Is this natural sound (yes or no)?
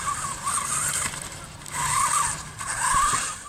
no